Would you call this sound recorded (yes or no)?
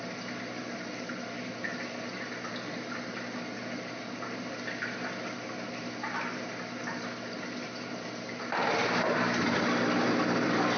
yes